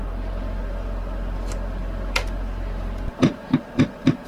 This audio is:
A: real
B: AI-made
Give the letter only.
A